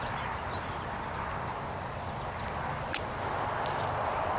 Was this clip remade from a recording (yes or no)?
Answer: no